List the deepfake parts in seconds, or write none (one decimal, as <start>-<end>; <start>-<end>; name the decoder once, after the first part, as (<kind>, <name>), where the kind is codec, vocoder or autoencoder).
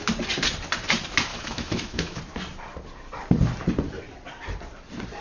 1.3-2.2 (autoencoder, DAC-VAE)